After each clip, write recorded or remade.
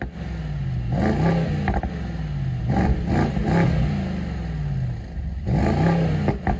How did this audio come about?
recorded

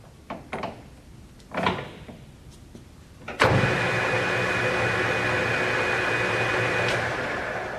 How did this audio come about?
recorded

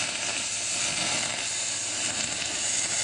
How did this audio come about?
recorded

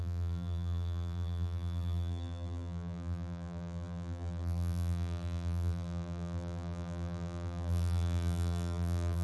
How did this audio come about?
remade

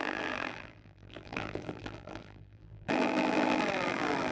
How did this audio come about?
remade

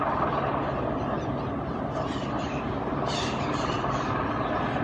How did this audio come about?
remade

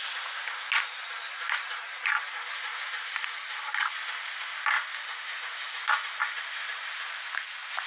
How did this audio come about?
recorded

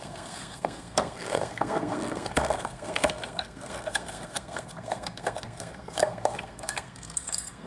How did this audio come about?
remade